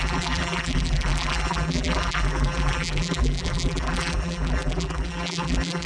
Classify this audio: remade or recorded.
remade